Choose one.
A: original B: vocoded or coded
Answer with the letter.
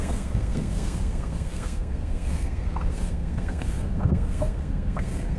B